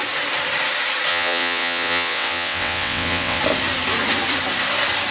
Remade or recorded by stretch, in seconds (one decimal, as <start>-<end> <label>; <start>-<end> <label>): 0.0-1.1 recorded; 1.1-3.4 remade; 3.4-5.1 recorded